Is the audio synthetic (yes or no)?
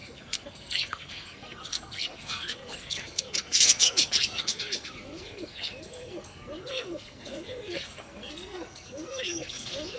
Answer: yes